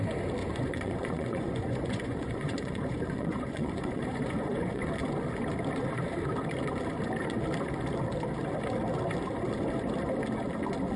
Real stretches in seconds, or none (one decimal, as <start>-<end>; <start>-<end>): 0.0-0.4; 4.9-11.0